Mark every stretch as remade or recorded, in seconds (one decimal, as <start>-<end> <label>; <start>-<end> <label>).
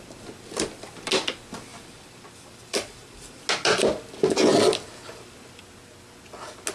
0.0-1.7 recorded; 1.7-3.4 remade; 3.4-6.7 recorded